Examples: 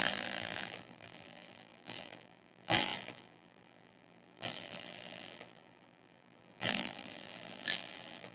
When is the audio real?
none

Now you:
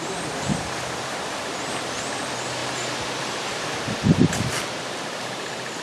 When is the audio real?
2.6-4.8

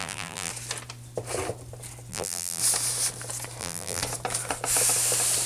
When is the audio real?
0.5-2.1; 2.6-3.6; 4.0-5.5

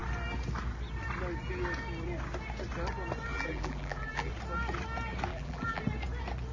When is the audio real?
0.0-3.3; 4.3-5.3; 5.8-6.5